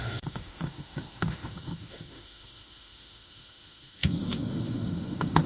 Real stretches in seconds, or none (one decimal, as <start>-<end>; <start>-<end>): none